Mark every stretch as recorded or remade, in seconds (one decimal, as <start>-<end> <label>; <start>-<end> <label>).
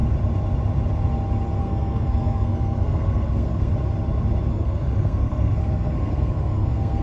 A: 0.0-1.6 recorded; 1.6-3.7 remade; 3.7-4.5 recorded; 4.5-7.0 remade